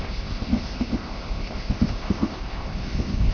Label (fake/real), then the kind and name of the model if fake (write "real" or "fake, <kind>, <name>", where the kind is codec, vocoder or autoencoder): fake, codec, ZipCodec